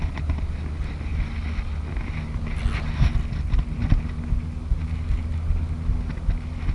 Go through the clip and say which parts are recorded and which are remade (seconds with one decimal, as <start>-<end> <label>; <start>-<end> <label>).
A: 0.0-6.7 recorded